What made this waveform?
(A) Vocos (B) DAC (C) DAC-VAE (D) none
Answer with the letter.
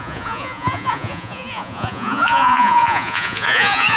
A